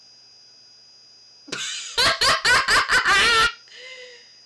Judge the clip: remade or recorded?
recorded